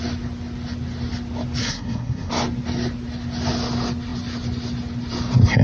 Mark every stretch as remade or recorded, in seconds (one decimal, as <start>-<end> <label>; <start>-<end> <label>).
0.0-1.6 recorded; 1.6-2.3 remade; 2.3-5.6 recorded